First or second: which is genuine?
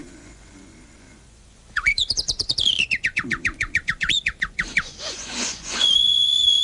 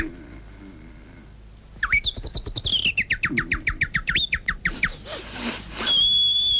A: second